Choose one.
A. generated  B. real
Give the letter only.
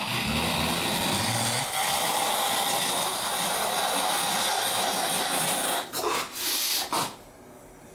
B